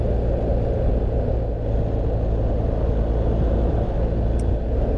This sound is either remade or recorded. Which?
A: recorded